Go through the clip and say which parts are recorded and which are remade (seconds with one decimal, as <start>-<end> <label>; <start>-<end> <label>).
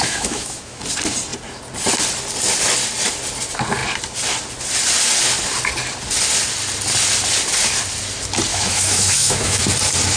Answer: 0.0-0.8 remade; 0.8-8.5 recorded; 8.5-9.6 remade; 9.6-10.2 recorded